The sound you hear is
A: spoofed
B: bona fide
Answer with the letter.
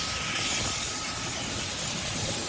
B